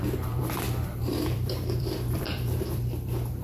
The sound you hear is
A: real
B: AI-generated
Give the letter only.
B